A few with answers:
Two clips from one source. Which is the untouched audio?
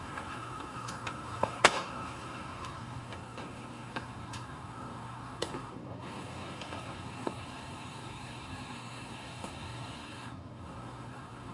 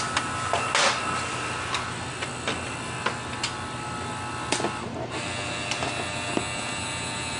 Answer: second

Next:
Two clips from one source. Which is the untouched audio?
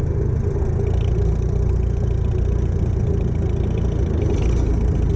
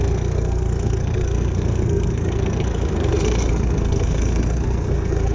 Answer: first